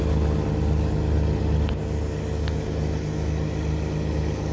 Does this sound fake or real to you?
real